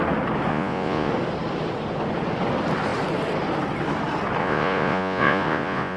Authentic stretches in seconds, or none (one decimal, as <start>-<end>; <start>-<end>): 0.0-0.5; 1.1-4.4